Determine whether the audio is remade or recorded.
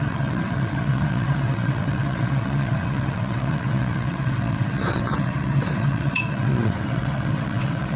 remade